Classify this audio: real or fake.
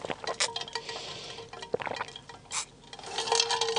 real